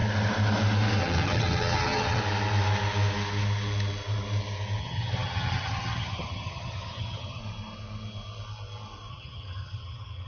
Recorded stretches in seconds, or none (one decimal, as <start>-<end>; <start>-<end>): 0.0-1.0; 2.2-4.8; 7.4-9.1